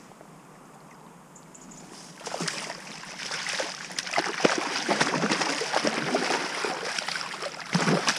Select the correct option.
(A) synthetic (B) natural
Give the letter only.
A